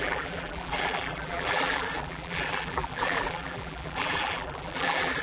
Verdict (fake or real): fake